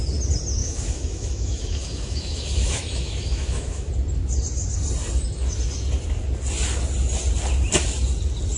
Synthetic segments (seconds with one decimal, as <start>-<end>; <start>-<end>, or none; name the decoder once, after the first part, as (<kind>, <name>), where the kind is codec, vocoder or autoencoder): 0.6-3.9 (autoencoder, DAC-VAE)